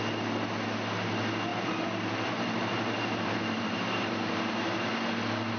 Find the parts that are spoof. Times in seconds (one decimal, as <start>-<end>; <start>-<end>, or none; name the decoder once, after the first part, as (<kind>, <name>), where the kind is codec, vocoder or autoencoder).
1.5-4.9 (vocoder, BigVGAN v2)